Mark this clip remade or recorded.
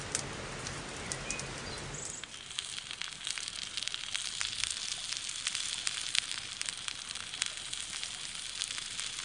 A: recorded